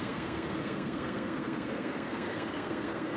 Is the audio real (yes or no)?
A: no